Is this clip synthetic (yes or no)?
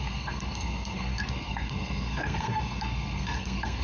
yes